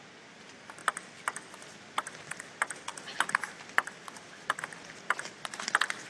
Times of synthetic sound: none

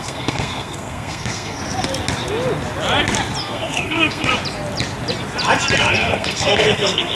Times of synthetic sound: 0.0-1.6 (codec, SNAC); 3.4-4.3; 5.9-7.1

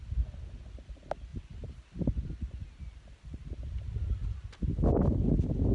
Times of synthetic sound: none

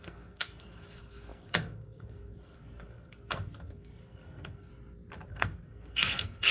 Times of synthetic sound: 0.0-4.7 (codec, SNAC); 5.3-6.5

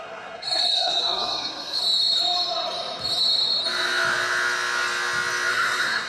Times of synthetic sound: 0.0-1.8 (codec, SNAC); 5.5-6.1

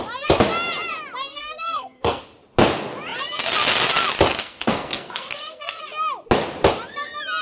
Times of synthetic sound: 1.3-2.2 (codec, SNAC); 4.3-5.8

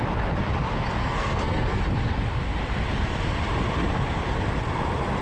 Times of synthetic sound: 1.0-1.8 (codec, SNAC)

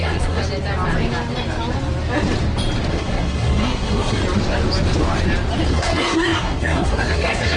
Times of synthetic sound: 0.0-0.4 (codec, SNAC); 2.9-4.2; 5.7-7.6